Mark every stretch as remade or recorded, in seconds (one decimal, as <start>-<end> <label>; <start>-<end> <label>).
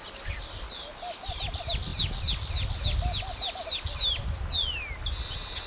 0.0-5.7 recorded